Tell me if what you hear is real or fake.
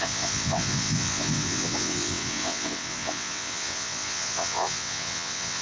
fake